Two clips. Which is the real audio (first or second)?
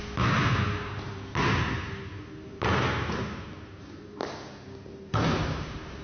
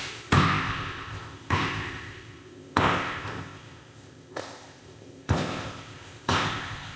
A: first